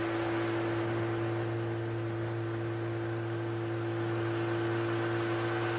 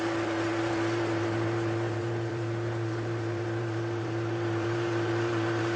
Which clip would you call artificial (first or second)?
second